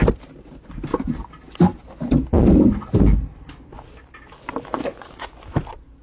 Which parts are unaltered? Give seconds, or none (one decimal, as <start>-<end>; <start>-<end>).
0.0-6.0